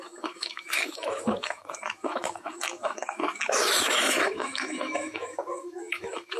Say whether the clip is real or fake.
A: fake